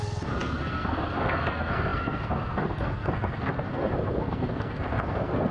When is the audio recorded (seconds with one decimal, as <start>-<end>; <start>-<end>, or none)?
none

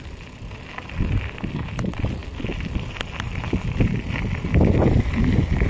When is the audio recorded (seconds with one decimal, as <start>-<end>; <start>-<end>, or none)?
0.0-5.7

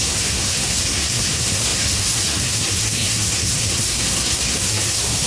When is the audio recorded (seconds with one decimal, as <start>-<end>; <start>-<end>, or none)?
none